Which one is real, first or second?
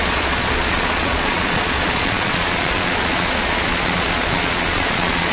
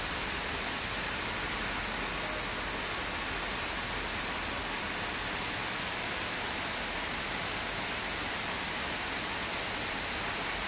second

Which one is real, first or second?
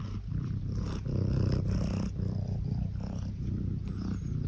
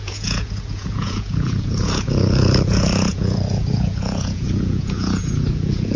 first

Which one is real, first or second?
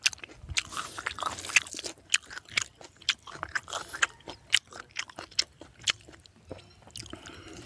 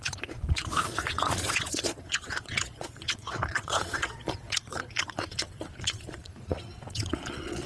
first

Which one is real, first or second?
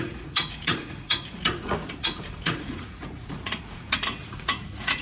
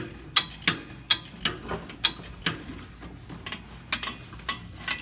second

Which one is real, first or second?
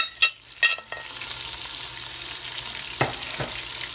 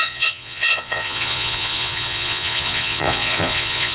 first